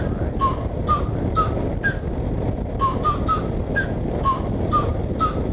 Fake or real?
real